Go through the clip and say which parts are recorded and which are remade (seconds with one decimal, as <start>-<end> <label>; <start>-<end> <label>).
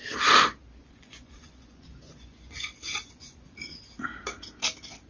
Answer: 0.0-0.8 recorded; 0.8-3.9 remade; 3.9-5.1 recorded